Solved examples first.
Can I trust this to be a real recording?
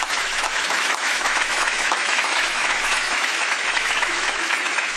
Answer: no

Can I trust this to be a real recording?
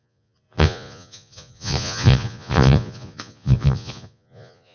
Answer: no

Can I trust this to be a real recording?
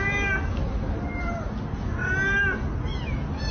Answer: yes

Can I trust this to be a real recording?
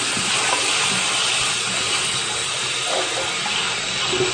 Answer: yes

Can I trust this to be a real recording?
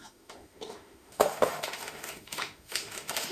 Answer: no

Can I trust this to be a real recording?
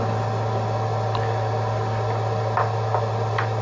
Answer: yes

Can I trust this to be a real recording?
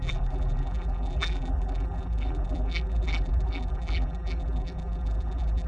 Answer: no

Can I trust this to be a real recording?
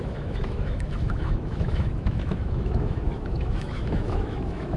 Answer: no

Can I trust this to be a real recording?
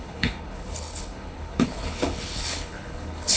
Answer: no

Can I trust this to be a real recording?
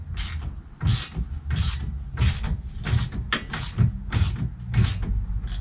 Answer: yes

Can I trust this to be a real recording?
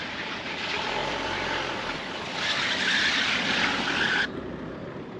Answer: yes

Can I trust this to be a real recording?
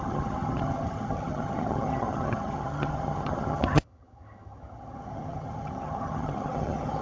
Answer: no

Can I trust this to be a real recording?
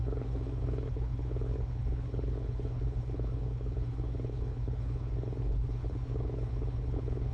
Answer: no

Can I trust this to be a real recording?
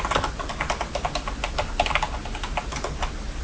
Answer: yes